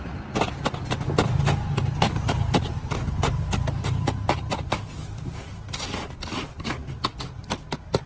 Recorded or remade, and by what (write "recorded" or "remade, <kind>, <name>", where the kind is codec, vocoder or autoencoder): recorded